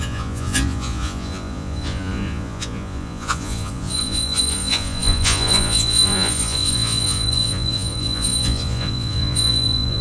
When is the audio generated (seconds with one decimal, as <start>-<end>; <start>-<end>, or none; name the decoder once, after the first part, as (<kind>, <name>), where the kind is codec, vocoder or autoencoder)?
0.0-10.0 (vocoder, Vocos)